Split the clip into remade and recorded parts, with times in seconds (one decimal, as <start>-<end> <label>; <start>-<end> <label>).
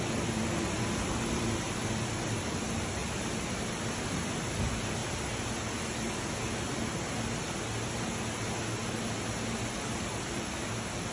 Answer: 0.0-3.0 remade; 3.0-4.0 recorded; 4.0-5.0 remade; 5.0-9.8 recorded; 9.8-11.1 remade